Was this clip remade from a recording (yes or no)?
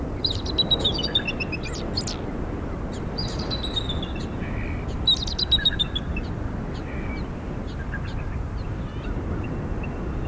no